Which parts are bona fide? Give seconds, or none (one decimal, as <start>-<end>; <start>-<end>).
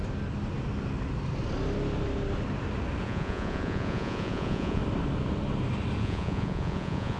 0.0-3.0; 4.8-6.0